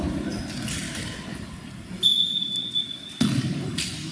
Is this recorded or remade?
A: recorded